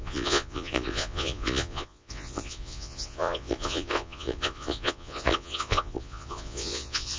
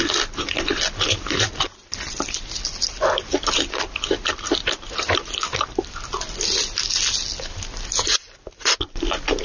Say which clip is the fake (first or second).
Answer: first